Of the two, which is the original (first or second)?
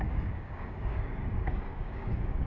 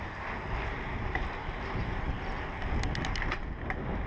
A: second